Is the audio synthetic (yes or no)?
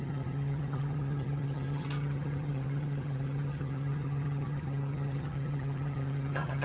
yes